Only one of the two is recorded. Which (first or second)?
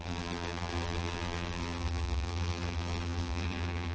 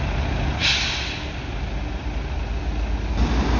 second